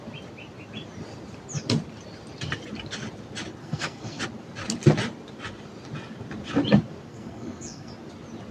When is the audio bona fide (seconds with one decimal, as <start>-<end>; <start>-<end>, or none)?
0.0-3.6; 4.2-7.1; 7.9-8.5

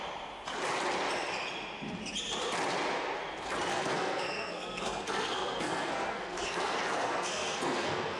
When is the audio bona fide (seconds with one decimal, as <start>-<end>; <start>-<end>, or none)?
0.0-3.7

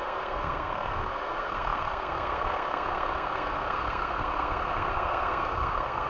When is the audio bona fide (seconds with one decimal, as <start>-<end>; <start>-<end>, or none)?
none

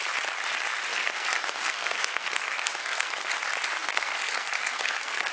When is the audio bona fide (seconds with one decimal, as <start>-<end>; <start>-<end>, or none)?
0.0-0.9; 3.3-3.8

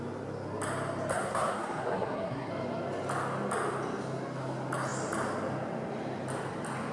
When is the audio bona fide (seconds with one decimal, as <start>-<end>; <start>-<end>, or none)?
0.0-1.1; 2.5-6.9

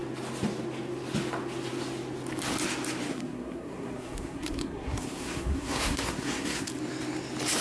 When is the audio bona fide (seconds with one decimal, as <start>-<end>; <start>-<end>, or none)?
0.0-3.1; 6.7-7.6

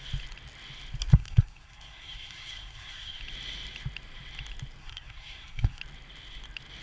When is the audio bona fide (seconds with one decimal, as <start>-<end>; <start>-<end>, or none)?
0.0-1.1; 3.2-4.8; 5.8-6.8

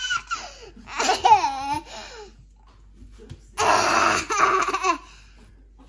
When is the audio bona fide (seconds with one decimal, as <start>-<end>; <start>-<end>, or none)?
0.0-5.9